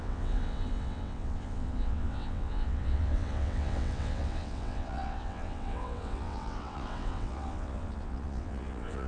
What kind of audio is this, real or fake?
fake